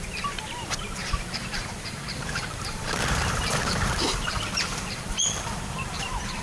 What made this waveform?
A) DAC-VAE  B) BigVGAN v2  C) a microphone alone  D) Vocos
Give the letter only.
B